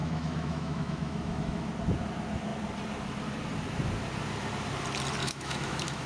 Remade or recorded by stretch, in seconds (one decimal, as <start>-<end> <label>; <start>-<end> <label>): 0.0-1.7 remade; 1.7-5.2 recorded; 5.2-6.1 remade